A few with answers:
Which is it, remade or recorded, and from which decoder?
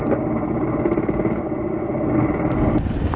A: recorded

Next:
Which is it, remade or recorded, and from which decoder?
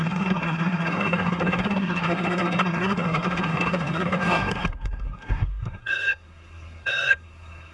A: remade, codec, SNAC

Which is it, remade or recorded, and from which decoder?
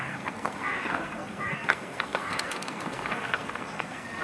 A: remade, codec, SNAC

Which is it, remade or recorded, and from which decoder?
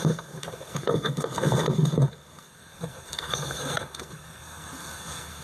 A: remade, codec, SNAC